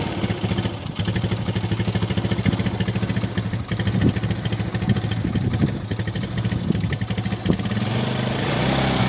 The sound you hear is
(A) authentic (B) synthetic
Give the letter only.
A